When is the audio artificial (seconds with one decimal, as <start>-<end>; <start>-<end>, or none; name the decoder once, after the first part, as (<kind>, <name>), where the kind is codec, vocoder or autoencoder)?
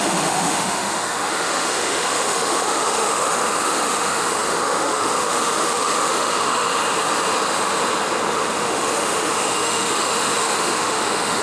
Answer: 0.0-6.8 (autoencoder, DAC-VAE); 8.3-11.4